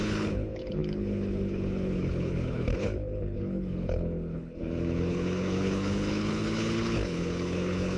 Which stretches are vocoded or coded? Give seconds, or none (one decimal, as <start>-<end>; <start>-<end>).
0.0-8.0